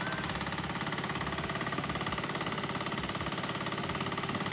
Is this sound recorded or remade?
recorded